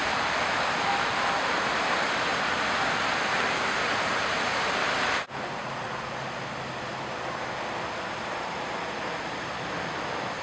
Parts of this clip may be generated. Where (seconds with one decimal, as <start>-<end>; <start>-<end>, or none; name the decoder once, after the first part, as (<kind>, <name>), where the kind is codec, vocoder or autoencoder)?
5.6-6.1 (vocoder, Vocos)